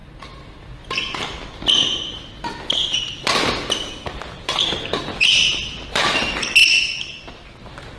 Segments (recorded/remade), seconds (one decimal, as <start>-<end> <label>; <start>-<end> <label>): 0.0-8.0 recorded

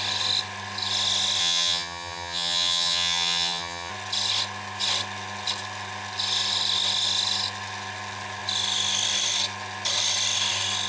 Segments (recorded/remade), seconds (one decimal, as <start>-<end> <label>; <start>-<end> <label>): 0.0-1.4 recorded; 1.4-3.9 remade; 3.9-10.9 recorded

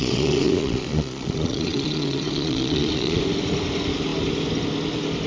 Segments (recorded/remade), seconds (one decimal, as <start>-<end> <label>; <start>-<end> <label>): 0.0-3.2 remade; 3.2-5.3 recorded